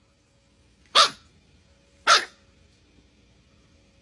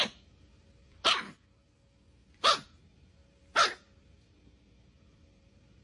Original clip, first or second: first